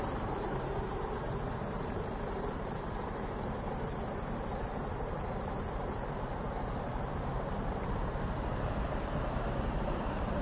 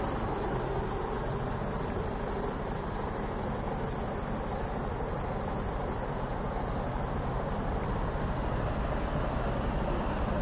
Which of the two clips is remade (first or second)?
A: first